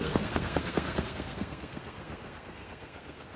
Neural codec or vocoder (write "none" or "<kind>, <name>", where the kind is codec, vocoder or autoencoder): codec, SNAC